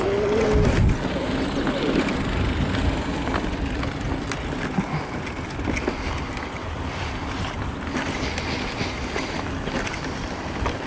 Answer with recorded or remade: recorded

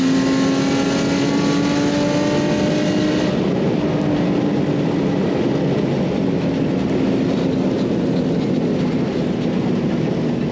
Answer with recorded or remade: recorded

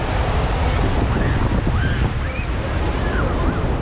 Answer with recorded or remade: recorded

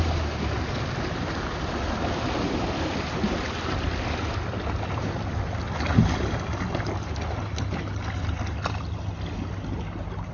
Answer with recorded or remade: recorded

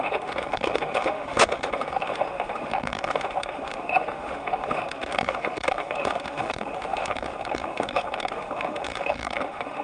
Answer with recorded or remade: remade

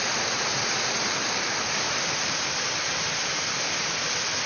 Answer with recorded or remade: recorded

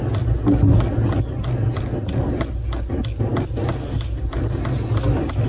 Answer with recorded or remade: recorded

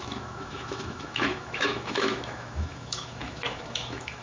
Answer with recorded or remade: remade